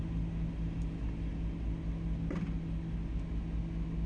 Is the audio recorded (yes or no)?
yes